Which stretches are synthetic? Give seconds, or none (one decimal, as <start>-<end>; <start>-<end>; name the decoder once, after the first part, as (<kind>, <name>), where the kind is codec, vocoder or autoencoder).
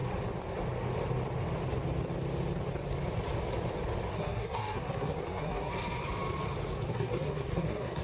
4.1-5.7 (codec, SNAC); 6.9-8.0